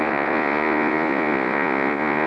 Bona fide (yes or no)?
no